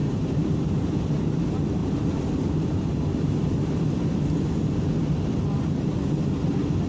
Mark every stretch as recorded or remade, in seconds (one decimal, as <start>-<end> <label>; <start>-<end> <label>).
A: 0.0-0.6 remade; 0.6-1.8 recorded; 1.8-4.2 remade; 4.2-6.9 recorded